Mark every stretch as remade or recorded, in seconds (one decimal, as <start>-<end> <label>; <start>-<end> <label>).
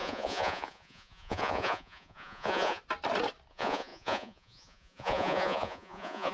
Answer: 0.0-2.8 remade; 2.8-3.5 recorded; 3.5-6.3 remade